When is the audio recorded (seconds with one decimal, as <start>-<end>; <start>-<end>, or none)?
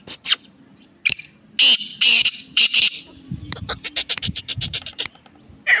0.0-1.9; 5.1-5.8